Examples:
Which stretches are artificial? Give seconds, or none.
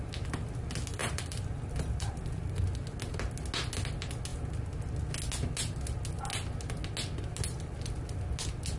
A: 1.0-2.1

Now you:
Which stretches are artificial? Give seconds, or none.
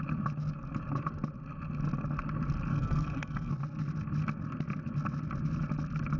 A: 2.7-3.5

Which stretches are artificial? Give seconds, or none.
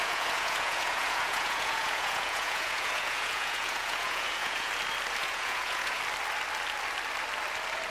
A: 0.0-4.7; 5.2-6.0